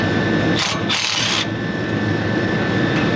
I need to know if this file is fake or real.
real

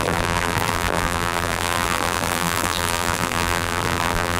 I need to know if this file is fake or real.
fake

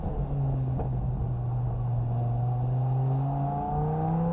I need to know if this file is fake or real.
real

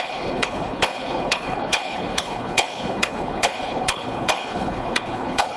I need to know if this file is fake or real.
fake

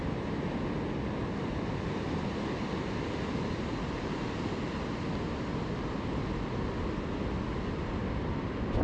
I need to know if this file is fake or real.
real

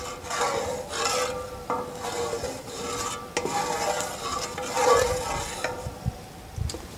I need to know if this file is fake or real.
real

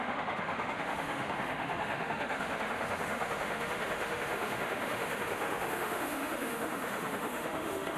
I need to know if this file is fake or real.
fake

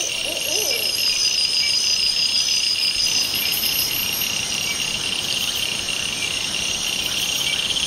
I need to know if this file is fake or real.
real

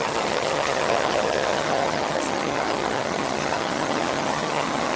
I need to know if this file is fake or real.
fake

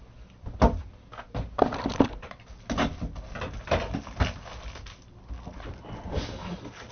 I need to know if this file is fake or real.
real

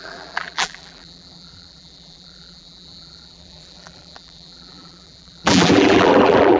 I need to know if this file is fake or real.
fake